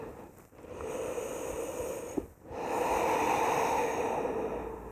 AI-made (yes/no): no